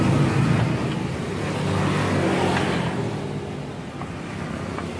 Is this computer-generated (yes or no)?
no